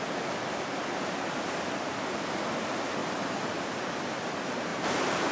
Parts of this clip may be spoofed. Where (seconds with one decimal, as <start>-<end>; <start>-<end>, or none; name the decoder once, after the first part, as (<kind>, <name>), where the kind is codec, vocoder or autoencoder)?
3.0-3.8 (vocoder, BigVGAN v2); 4.7-5.3